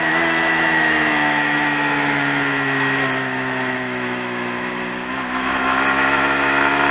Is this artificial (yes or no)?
yes